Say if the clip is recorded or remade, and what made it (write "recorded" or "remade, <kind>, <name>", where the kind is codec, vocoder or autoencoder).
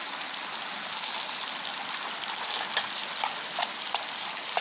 recorded